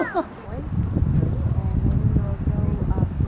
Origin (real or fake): real